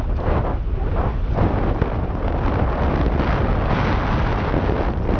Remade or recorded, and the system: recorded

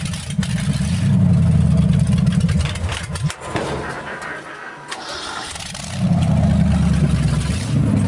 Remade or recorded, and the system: recorded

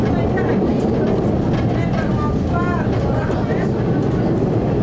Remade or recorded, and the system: recorded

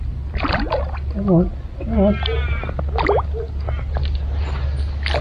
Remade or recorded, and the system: recorded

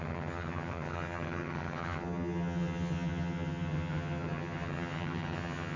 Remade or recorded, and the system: remade, vocoder, HiFi-GAN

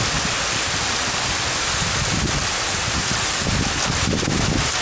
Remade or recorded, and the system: recorded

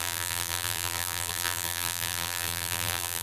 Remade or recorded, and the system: remade, vocoder, BigVGAN v2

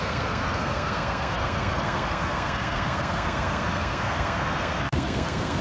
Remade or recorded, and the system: remade, codec, SNAC